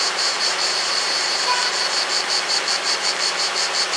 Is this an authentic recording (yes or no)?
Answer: no